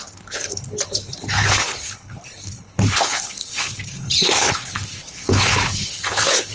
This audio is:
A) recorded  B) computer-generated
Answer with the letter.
B